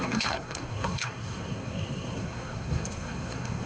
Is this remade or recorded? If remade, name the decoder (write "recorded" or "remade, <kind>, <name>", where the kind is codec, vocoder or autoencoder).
remade, codec, SNAC